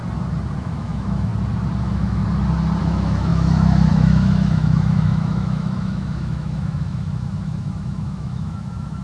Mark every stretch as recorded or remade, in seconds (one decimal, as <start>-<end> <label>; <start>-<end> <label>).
0.0-0.6 recorded; 0.6-1.3 remade; 1.3-1.8 recorded; 1.8-2.2 remade; 2.2-2.8 recorded; 2.8-9.0 remade